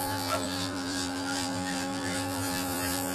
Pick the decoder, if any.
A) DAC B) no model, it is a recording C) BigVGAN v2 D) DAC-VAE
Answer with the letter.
C